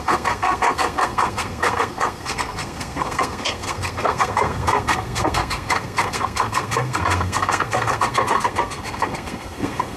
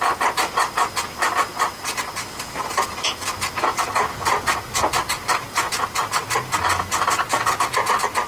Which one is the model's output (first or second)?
first